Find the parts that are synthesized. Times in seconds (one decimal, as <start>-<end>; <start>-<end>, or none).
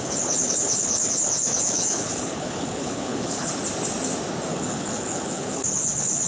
0.0-3.5; 4.5-6.3